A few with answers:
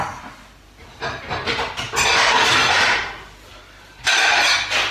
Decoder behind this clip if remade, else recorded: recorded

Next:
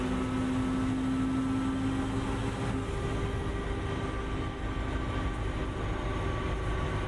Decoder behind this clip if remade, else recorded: recorded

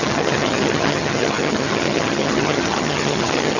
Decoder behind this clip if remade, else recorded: remade, vocoder, HiFi-GAN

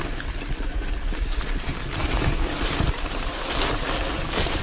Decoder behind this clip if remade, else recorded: recorded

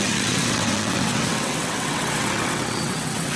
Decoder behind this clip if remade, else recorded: remade, vocoder, WaveNeXt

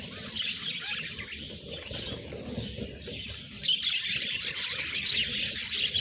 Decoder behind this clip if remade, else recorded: recorded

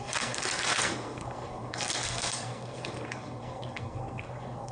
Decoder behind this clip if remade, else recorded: remade, codec, SNAC